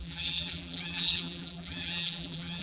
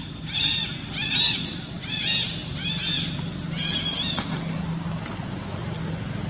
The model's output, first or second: first